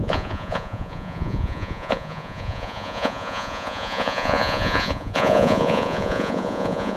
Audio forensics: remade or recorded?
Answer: remade